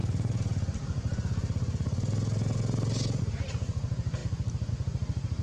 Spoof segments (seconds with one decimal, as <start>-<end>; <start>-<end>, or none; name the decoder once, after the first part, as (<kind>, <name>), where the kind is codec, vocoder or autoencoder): none